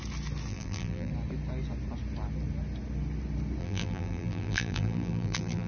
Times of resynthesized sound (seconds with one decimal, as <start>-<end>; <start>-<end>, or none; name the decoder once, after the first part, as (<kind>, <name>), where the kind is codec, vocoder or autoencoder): 0.5-1.1 (vocoder, BigVGAN v2); 3.6-5.7